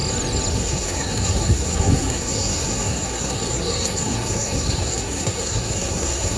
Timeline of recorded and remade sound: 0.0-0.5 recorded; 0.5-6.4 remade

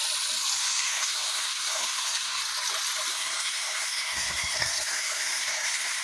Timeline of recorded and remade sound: 0.0-0.6 recorded; 0.6-2.4 remade; 2.4-3.1 recorded; 3.1-6.0 remade